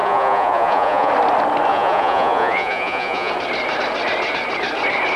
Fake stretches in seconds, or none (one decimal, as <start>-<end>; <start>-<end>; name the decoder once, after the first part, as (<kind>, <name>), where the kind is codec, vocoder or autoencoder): 0.0-1.1 (vocoder, Vocos); 1.7-3.3